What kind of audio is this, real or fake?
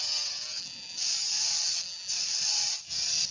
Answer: real